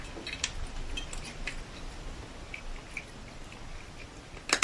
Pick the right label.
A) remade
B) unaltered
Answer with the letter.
B